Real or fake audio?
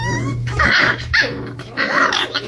fake